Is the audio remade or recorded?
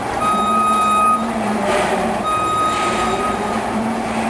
remade